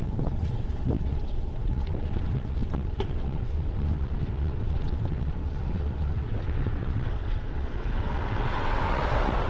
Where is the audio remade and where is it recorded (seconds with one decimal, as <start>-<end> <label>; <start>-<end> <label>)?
0.0-9.5 remade